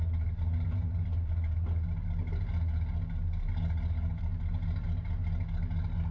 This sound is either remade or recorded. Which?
recorded